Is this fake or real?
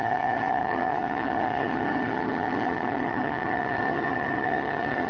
fake